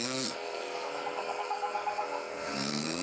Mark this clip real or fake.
fake